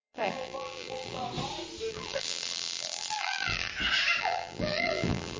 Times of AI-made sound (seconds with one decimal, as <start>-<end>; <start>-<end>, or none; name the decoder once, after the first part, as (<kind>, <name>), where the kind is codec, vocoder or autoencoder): 0.0-1.2 (vocoder, BigVGAN v2); 1.9-3.7; 4.2-5.4